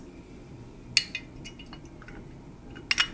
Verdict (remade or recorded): recorded